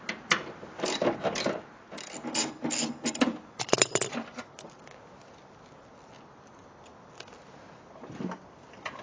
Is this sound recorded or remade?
recorded